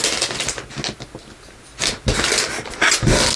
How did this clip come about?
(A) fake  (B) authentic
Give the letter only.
B